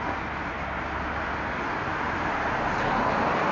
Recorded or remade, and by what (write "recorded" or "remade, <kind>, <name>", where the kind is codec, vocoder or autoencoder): recorded